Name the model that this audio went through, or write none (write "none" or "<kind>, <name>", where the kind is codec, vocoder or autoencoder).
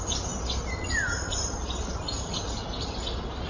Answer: none